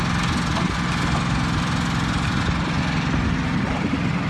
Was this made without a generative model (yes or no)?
yes